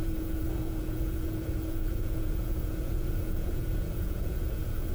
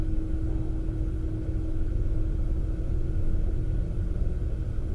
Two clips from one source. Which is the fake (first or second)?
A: first